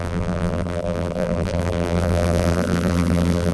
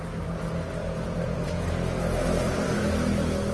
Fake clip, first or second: first